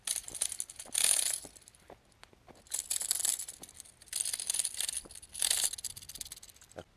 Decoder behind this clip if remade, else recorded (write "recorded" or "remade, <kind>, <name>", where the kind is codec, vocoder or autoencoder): recorded